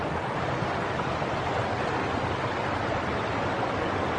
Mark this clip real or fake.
real